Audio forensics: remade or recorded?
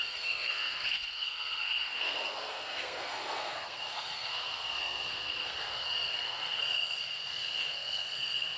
remade